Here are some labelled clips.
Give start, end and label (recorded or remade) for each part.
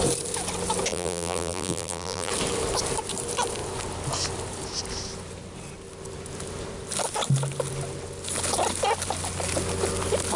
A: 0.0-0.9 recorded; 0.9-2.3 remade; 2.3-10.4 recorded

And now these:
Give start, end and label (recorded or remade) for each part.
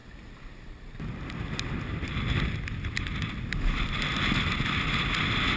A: 0.0-5.6 recorded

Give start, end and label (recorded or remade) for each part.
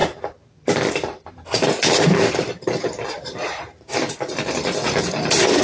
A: 0.0-1.3 recorded; 1.3-5.6 remade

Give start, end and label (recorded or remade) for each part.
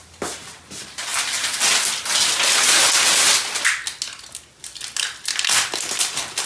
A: 0.0-6.5 recorded